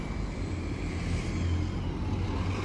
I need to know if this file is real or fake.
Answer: real